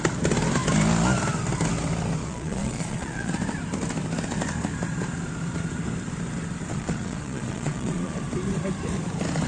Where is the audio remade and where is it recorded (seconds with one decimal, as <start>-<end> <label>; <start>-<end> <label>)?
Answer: 0.0-2.2 recorded; 2.2-3.3 remade; 3.3-6.7 recorded; 6.7-8.2 remade; 8.2-9.5 recorded